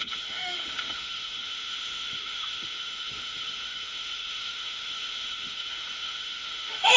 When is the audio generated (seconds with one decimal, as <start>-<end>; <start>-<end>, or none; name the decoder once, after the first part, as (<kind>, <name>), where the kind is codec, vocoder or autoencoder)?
0.0-7.0 (autoencoder, DAC-VAE)